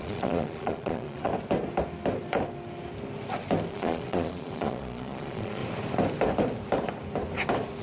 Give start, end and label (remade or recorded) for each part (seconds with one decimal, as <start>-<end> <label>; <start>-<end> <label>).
0.0-1.3 remade; 1.3-3.7 recorded; 3.7-5.6 remade; 5.6-7.8 recorded